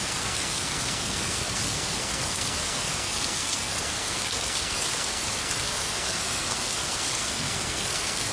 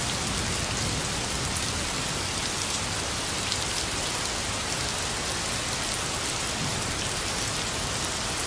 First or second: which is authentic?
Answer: second